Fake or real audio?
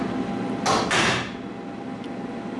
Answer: real